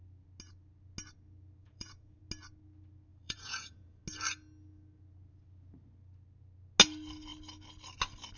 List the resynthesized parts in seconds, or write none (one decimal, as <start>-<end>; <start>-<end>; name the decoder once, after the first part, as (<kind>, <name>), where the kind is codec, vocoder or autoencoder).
1.6-2.2 (vocoder, Vocos); 3.1-4.0